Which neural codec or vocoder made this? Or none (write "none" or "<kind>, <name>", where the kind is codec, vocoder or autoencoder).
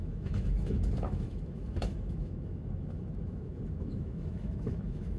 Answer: autoencoder, DAC-VAE